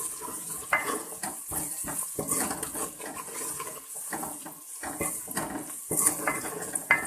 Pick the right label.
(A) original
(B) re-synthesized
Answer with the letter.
B